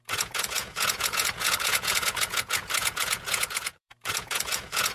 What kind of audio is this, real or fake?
fake